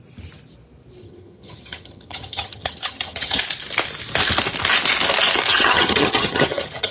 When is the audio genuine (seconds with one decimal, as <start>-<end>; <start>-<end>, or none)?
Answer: 0.0-1.0; 3.4-5.5

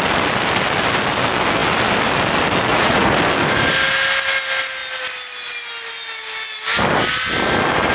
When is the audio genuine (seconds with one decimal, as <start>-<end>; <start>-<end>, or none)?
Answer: 0.0-2.7; 3.2-7.9

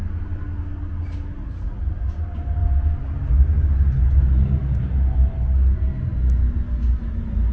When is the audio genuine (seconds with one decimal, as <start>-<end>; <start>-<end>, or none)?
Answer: 0.0-1.4; 1.9-7.5